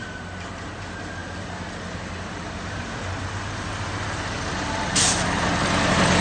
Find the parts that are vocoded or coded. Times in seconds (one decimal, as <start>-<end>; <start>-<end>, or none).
none